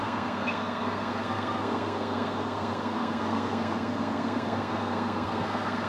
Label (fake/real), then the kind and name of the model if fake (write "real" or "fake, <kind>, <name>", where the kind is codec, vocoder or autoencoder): fake, codec, SNAC